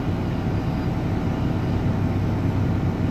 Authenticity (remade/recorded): recorded